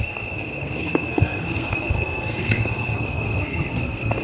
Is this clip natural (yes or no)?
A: no